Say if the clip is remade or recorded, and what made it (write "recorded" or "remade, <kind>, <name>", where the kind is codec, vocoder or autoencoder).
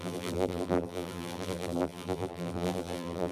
remade, vocoder, BigVGAN v2